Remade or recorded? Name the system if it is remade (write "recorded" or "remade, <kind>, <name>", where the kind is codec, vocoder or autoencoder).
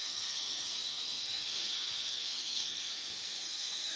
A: remade, codec, SNAC